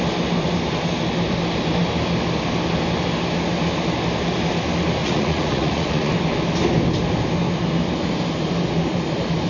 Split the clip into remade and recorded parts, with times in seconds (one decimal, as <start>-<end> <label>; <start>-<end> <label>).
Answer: 0.0-5.0 recorded; 5.0-6.1 remade; 6.1-9.5 recorded